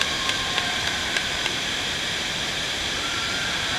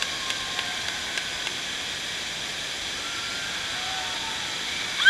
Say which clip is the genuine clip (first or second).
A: second